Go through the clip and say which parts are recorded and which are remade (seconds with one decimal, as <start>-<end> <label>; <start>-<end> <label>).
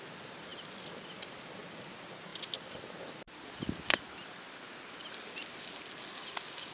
0.0-6.7 recorded